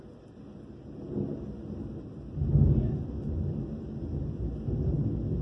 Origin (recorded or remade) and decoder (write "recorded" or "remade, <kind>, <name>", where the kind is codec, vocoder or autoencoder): recorded